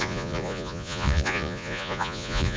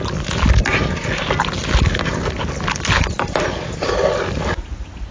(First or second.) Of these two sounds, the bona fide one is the second